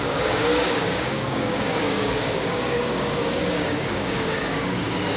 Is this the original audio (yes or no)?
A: no